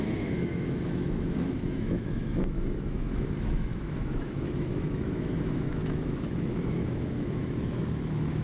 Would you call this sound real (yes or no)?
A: no